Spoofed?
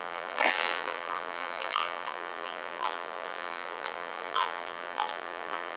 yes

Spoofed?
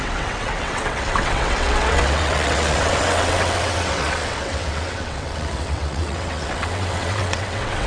yes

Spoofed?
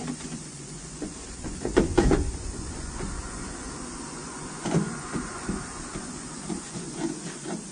yes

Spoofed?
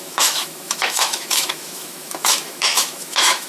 yes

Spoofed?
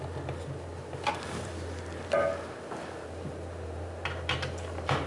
yes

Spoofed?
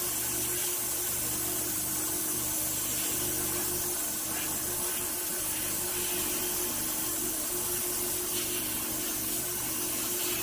no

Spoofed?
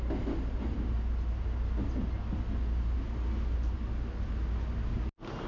no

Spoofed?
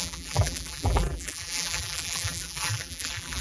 yes